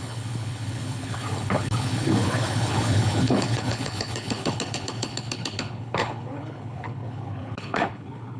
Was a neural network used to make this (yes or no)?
yes